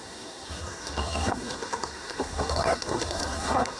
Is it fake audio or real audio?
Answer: fake